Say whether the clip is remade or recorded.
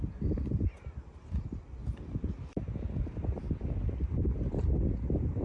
recorded